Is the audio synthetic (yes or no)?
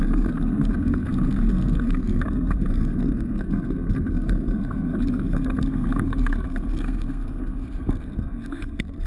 yes